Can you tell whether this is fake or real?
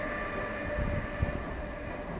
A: real